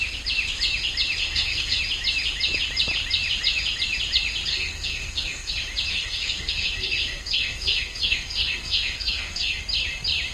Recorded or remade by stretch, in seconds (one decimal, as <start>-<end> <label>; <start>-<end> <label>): 0.0-1.2 recorded; 1.2-1.8 remade; 1.8-4.5 recorded; 4.5-5.5 remade; 5.5-5.9 recorded; 5.9-9.6 remade; 9.6-10.3 recorded